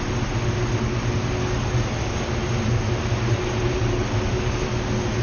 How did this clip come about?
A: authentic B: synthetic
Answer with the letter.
A